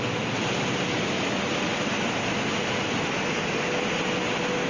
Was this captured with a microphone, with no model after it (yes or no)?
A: yes